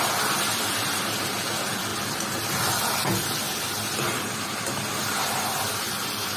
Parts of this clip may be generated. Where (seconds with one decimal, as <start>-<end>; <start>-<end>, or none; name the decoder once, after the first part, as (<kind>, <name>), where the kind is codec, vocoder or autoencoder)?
none